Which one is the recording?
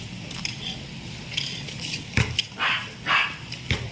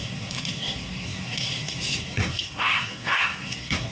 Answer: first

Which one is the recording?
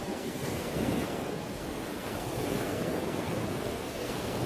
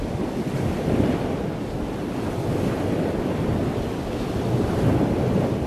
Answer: second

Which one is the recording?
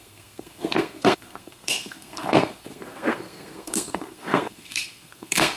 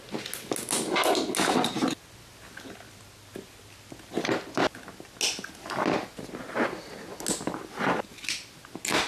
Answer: second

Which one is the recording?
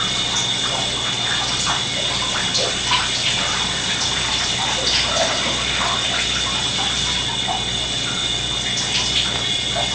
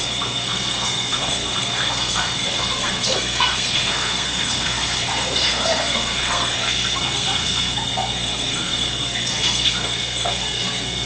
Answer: first